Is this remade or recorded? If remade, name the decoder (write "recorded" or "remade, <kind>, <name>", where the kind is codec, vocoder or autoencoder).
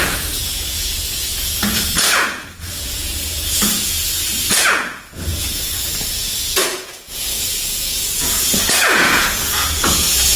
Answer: remade, vocoder, Vocos